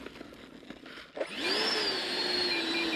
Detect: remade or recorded recorded